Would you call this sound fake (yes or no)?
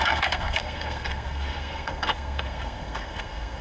yes